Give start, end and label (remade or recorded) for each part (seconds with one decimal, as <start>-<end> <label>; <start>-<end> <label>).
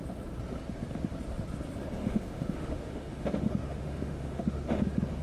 0.0-2.0 recorded; 2.0-4.6 remade; 4.6-5.2 recorded